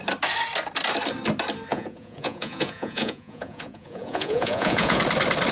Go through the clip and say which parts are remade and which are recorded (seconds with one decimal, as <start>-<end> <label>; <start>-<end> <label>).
0.0-1.7 recorded; 1.7-5.0 remade; 5.0-5.5 recorded